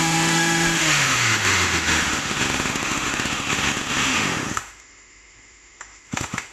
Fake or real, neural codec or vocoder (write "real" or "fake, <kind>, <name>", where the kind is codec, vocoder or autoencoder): fake, autoencoder, DAC-VAE